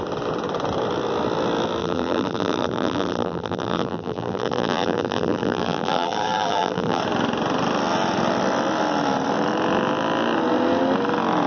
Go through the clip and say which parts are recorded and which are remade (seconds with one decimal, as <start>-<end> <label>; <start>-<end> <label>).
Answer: 0.0-1.8 recorded; 1.8-7.0 remade; 7.0-11.5 recorded

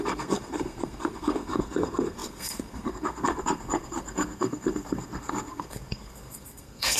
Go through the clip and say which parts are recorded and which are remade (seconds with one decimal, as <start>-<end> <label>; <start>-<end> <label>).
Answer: 0.0-7.0 remade

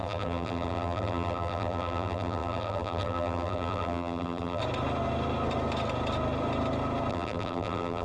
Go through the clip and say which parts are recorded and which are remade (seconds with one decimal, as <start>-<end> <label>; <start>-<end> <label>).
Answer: 0.0-4.6 remade; 4.6-7.1 recorded; 7.1-8.0 remade

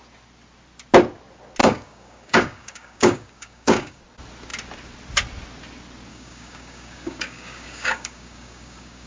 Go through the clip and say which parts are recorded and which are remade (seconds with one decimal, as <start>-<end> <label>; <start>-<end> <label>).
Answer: 0.0-1.6 recorded; 1.6-4.0 remade; 4.0-6.1 recorded; 6.1-9.1 remade

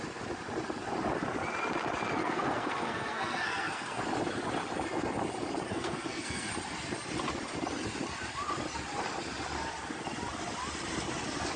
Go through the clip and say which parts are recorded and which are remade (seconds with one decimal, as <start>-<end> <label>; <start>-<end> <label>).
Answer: 0.0-2.2 recorded; 2.2-4.0 remade; 4.0-5.7 recorded; 5.7-6.5 remade; 6.5-11.6 recorded

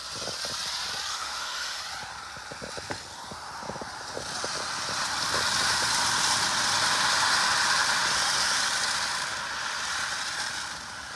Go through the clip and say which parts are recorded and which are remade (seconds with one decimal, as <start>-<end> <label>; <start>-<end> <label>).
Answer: 0.0-1.1 recorded; 1.1-1.8 remade; 1.8-11.2 recorded

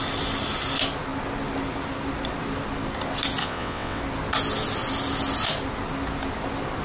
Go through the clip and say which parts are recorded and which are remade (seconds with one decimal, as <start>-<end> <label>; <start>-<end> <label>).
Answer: 0.0-3.4 recorded; 3.4-4.0 remade; 4.0-6.8 recorded